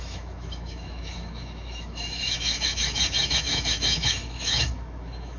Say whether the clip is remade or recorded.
remade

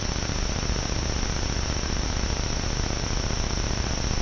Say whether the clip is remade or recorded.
recorded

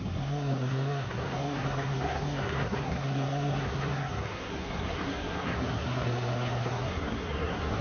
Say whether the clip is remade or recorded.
remade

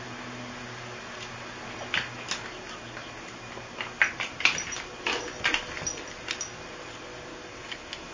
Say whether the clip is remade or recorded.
recorded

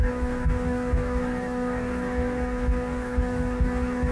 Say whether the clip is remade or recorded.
remade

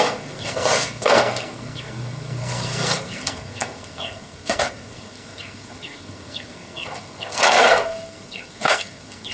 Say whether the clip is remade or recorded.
remade